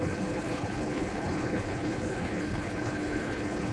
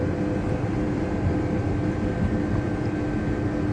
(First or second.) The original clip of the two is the second